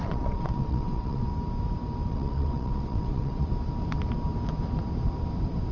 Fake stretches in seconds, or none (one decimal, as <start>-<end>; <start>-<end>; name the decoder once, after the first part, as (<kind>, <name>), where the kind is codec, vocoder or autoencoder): 0.0-1.3 (vocoder, WaveNeXt); 2.1-3.5